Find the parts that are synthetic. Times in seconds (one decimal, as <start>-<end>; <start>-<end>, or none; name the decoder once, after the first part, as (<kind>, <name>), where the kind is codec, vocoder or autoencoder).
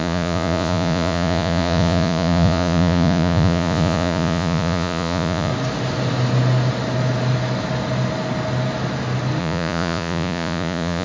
0.0-5.5 (vocoder, Vocos); 9.4-11.0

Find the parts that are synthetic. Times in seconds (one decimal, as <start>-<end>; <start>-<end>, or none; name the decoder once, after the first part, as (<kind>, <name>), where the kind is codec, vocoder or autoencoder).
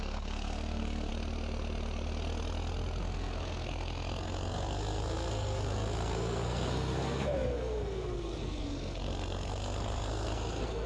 0.0-1.1 (codec, SNAC); 3.0-10.9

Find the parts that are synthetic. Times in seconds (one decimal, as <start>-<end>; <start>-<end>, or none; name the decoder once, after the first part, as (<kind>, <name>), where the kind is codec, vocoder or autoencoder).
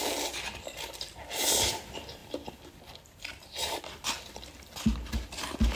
none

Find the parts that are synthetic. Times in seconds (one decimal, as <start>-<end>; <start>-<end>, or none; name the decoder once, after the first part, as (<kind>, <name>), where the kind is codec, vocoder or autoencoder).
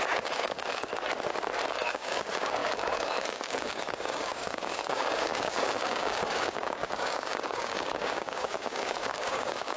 0.0-0.9 (codec, DAC); 1.7-9.8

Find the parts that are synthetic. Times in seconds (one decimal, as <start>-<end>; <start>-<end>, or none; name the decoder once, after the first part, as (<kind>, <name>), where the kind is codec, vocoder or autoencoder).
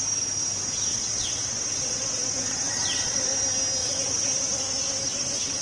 0.9-3.3 (vocoder, WaveNeXt); 3.8-4.6; 5.0-5.6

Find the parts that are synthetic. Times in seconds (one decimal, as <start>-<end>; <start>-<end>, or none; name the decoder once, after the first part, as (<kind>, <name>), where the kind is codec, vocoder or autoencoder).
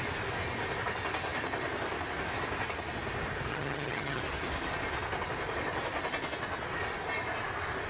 3.5-4.2 (vocoder, HiFi-GAN)